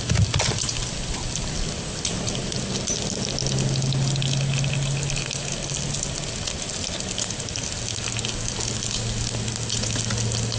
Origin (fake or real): real